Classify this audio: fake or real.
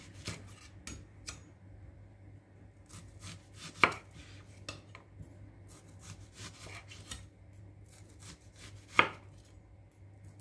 real